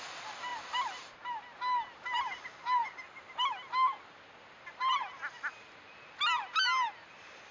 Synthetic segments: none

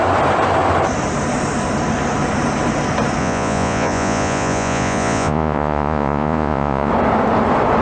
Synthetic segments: 3.2-6.9 (vocoder, Vocos)

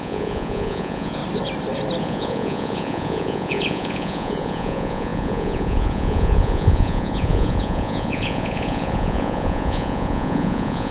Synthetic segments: 0.0-1.2 (vocoder, Vocos); 2.0-10.9

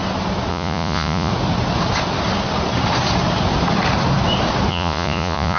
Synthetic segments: 0.5-1.3 (vocoder, Vocos); 4.7-5.6

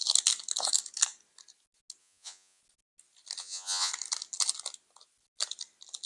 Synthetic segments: 2.0-2.6 (vocoder, Vocos); 3.4-3.9

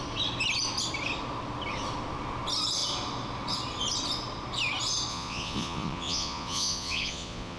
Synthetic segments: 5.1-7.6 (vocoder, Vocos)

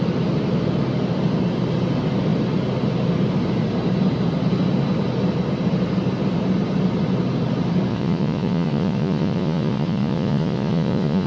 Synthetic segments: 7.9-11.3 (vocoder, Vocos)

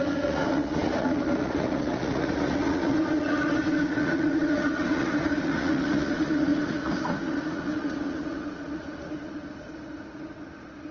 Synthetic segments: 0.0-10.9 (vocoder, Vocos)